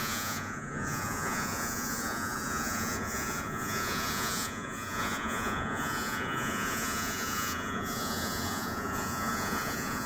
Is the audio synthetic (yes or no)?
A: yes